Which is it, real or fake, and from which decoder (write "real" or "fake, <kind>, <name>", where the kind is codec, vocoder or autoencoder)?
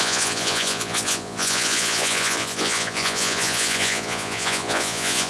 fake, vocoder, Vocos